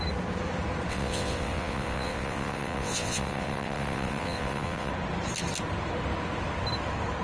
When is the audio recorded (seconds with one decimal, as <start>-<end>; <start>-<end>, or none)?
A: 0.0-0.9; 4.9-7.2

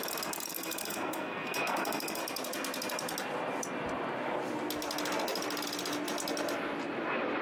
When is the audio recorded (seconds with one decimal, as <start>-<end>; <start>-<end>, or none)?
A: 0.0-0.5; 2.2-7.4

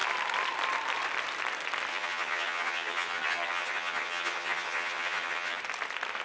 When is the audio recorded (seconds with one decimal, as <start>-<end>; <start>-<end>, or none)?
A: 0.0-1.9; 5.6-6.2

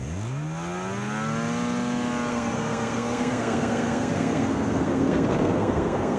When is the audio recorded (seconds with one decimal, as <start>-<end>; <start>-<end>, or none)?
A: 0.0-2.3

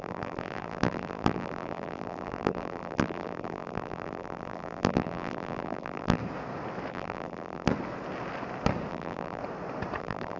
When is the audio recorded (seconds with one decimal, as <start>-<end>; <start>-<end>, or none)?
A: 6.2-6.9; 7.7-8.9; 9.4-10.0